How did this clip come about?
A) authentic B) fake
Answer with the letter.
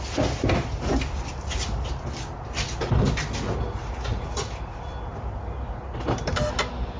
A